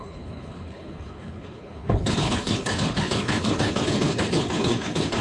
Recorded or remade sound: remade